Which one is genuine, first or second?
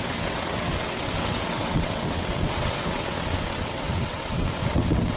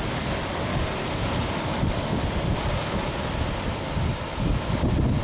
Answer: second